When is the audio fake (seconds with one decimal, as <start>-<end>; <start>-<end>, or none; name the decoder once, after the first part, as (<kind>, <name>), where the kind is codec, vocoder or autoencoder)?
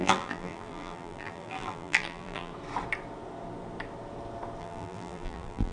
0.0-2.5 (vocoder, BigVGAN v2); 4.6-5.7